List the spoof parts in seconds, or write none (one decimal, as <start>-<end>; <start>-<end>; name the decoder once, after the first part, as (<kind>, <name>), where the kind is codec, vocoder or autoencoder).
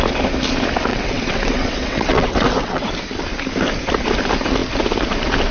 0.9-2.9 (vocoder, WaveNeXt)